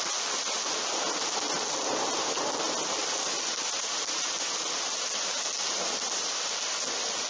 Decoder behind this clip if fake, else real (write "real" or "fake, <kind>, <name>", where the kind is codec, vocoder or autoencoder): real